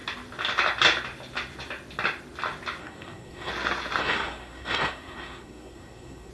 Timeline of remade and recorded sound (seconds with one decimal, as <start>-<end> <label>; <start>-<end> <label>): 0.0-2.8 recorded; 2.8-3.5 remade; 3.5-4.0 recorded; 4.0-6.3 remade